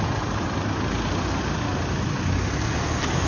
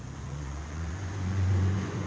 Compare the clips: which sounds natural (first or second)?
first